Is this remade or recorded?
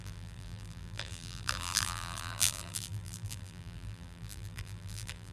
remade